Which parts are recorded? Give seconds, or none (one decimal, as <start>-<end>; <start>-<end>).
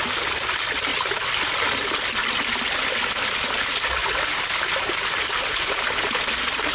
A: 0.9-1.5; 4.0-6.7